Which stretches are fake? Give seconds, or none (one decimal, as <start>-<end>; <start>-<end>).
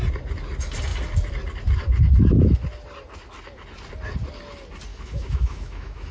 4.9-6.1